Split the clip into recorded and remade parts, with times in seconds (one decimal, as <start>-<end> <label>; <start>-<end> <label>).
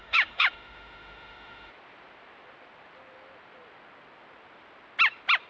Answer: 0.0-1.7 remade; 1.7-5.5 recorded